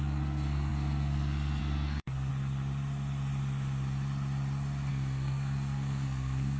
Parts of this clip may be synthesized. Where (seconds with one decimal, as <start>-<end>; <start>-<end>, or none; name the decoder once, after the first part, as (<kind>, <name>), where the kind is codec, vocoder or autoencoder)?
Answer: 0.0-2.3 (codec, SNAC); 4.9-6.6